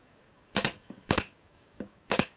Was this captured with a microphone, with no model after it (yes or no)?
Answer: no